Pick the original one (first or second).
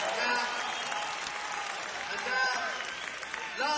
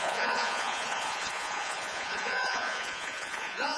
first